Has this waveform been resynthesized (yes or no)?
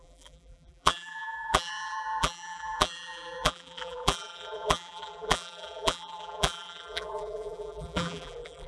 yes